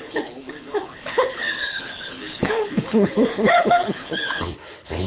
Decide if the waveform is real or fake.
fake